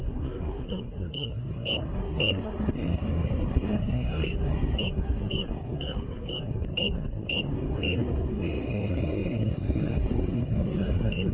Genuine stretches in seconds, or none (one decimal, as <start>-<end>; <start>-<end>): none

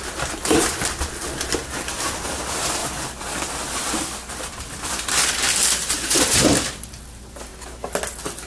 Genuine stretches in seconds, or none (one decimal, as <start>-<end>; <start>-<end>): 0.0-2.8; 5.3-8.5

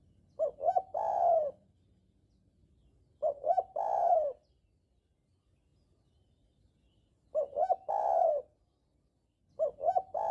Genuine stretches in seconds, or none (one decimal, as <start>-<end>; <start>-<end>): 0.0-10.3

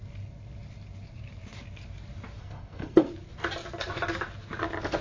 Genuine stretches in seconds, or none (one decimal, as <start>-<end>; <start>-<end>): 0.0-2.4; 3.1-5.0

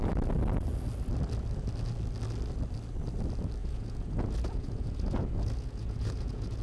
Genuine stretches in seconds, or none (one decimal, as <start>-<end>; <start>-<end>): 0.0-3.6

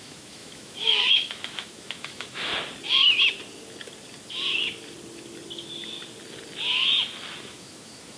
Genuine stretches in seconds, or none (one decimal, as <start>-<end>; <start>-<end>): 2.5-7.4

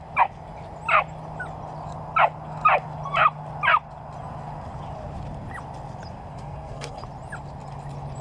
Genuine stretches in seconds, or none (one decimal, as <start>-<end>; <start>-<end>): 0.0-6.3; 7.0-8.2

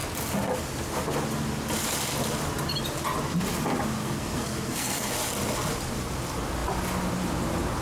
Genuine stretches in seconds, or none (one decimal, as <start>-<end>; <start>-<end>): 0.0-4.0; 5.1-7.8